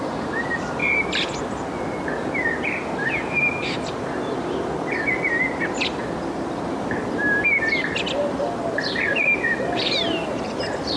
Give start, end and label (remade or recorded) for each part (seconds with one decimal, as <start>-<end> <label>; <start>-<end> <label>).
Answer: 0.0-11.0 recorded